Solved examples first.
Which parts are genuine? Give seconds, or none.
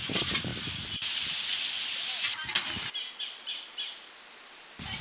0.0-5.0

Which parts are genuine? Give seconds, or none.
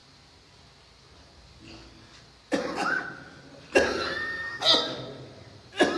0.0-6.0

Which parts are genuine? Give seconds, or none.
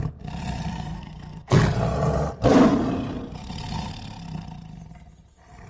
0.0-0.7; 1.6-5.7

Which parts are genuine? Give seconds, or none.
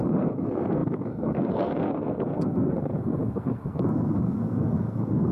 none